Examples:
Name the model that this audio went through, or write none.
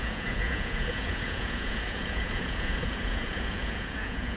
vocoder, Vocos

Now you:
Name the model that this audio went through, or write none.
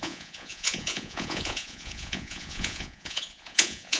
vocoder, Vocos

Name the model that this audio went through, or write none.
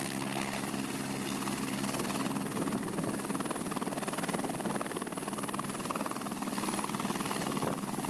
none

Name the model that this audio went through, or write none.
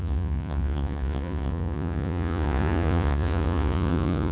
vocoder, Vocos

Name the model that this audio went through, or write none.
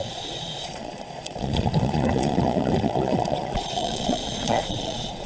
vocoder, Vocos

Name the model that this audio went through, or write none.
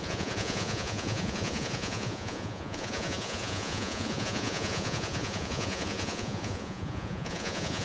vocoder, Vocos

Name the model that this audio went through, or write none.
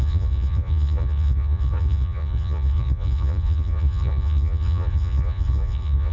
vocoder, Vocos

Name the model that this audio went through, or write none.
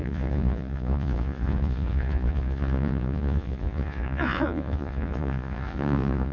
vocoder, Vocos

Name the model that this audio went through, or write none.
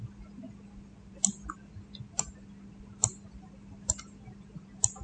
none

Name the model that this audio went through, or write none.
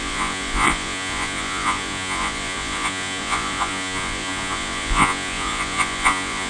vocoder, Vocos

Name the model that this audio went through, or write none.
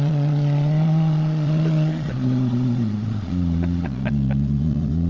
vocoder, Vocos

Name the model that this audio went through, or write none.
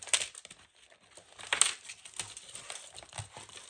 none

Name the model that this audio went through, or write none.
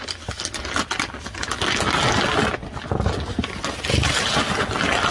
none